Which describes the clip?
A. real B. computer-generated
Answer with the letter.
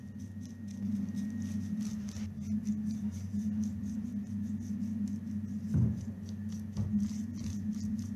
A